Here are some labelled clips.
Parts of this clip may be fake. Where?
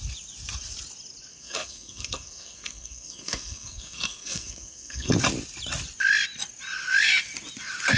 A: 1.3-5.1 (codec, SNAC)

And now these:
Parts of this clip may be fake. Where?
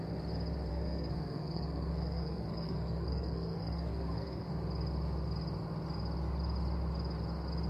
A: 0.7-4.5 (codec, SNAC)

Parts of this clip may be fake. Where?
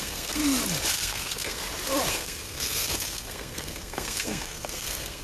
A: 0.0-0.4 (codec, SNAC); 0.9-1.6; 2.1-5.2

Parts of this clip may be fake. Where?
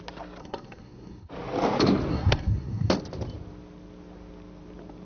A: 0.4-1.3 (codec, SNAC); 2.1-2.9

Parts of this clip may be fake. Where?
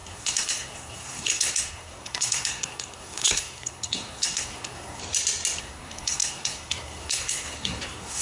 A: 0.0-5.0 (codec, SNAC); 5.6-8.2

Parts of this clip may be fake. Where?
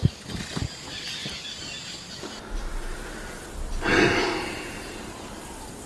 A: none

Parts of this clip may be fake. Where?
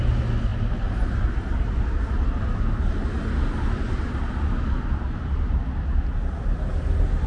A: none